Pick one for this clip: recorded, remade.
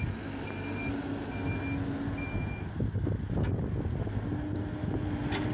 recorded